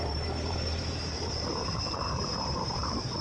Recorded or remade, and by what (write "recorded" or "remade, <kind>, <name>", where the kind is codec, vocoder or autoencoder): remade, vocoder, BigVGAN v2